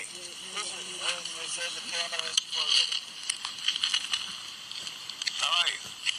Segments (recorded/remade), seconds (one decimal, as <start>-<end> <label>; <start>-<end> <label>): 0.0-6.2 recorded